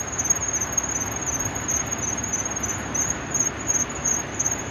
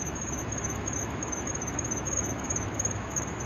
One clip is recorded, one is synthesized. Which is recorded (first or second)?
first